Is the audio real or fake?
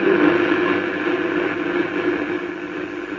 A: real